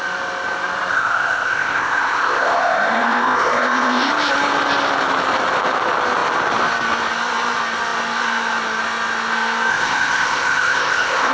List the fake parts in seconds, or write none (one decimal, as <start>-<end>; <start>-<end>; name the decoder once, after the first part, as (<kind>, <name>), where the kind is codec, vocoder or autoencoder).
0.9-4.1 (codec, ZipCodec); 9.7-11.3